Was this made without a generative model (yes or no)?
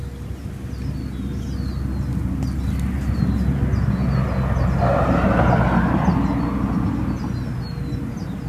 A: yes